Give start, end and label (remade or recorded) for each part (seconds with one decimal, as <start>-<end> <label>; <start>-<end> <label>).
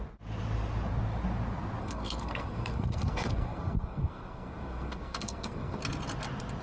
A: 0.0-1.8 recorded; 1.8-5.8 remade; 5.8-6.6 recorded